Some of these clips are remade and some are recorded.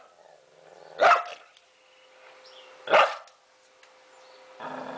recorded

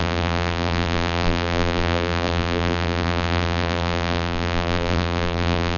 remade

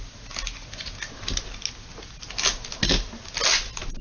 recorded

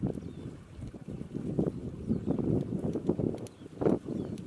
recorded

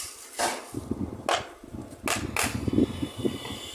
recorded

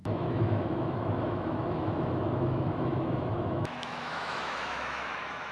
remade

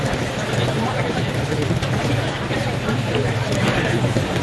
remade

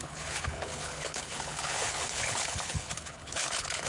remade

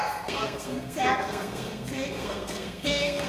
remade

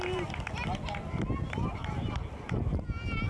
recorded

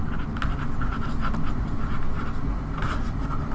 recorded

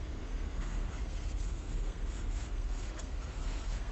remade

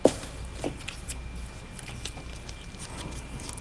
recorded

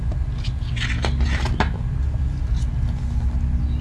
recorded